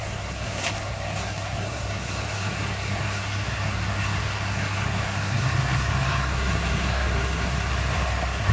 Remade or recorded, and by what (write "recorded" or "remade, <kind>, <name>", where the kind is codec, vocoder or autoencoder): remade, codec, SNAC